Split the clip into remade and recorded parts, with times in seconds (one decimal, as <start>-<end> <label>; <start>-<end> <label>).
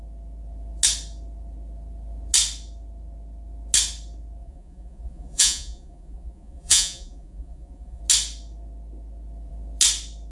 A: 0.0-4.4 recorded; 4.4-8.0 remade; 8.0-10.3 recorded